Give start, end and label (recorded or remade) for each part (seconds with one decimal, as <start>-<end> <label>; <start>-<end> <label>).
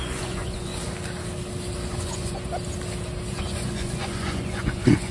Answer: 0.0-0.7 remade; 0.7-2.0 recorded; 2.0-2.5 remade; 2.5-3.3 recorded; 3.3-5.1 remade